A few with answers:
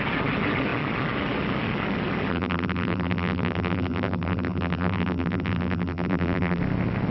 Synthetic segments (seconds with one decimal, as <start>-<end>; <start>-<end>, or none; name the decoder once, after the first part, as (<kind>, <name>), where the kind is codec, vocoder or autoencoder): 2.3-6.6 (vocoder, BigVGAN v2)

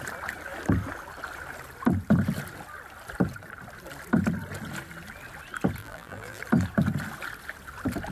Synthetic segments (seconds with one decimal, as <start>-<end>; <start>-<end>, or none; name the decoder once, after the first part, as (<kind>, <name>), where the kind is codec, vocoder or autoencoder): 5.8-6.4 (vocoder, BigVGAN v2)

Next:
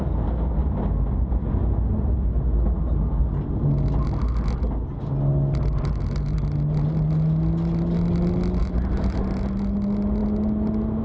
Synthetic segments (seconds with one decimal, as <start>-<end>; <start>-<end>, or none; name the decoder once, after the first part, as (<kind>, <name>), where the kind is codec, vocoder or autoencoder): 8.6-9.2 (vocoder, BigVGAN v2)

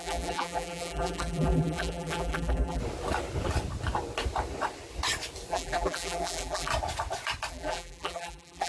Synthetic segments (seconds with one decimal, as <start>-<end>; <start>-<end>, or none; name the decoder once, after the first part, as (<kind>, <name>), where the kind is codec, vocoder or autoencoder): 0.0-2.8 (vocoder, BigVGAN v2); 5.5-6.7; 7.5-8.7

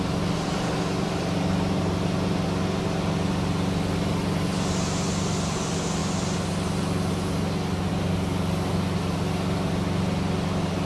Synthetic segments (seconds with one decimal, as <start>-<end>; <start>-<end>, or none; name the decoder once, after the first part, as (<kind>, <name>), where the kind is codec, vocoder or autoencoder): none

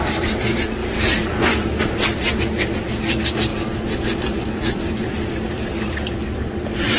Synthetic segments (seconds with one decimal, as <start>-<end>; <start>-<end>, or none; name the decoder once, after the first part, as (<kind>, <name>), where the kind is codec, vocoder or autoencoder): 3.5-7.0 (vocoder, BigVGAN v2)